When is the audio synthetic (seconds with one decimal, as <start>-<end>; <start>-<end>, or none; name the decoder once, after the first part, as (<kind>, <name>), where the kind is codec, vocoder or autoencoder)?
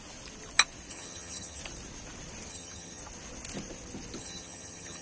0.9-1.6 (vocoder, HiFi-GAN); 2.5-3.0; 4.2-5.0